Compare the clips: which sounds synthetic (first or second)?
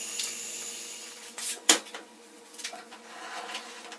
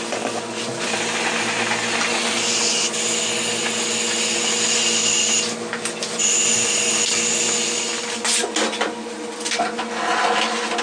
first